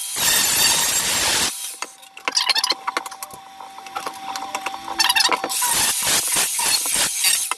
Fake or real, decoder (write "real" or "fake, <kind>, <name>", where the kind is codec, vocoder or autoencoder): real